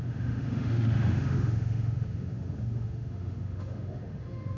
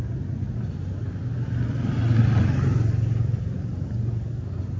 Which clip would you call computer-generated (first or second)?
first